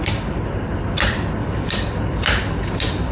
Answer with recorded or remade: remade